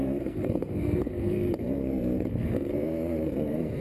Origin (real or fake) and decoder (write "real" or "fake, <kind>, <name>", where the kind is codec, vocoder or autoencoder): fake, codec, SNAC